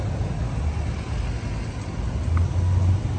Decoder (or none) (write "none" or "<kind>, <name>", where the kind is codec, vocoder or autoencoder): none